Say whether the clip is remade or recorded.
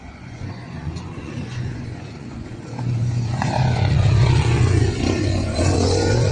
remade